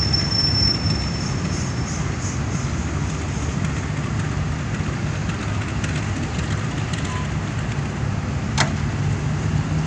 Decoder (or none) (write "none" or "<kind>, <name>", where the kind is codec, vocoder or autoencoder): none